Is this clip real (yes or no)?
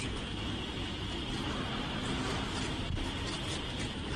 yes